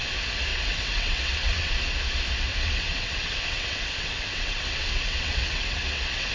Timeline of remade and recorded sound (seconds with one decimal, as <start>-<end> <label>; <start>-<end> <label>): 0.0-0.5 recorded; 0.5-1.7 remade; 1.7-2.5 recorded; 2.5-6.3 remade